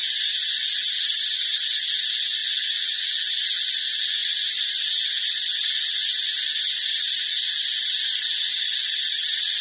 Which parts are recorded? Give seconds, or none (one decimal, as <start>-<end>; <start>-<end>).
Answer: 0.0-2.4; 3.2-9.6